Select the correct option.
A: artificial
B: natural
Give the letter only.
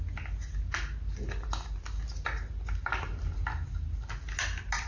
B